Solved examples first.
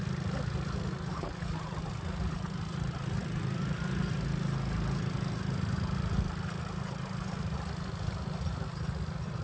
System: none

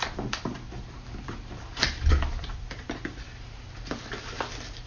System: vocoder, BigVGAN v2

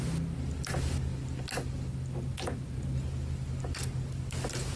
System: none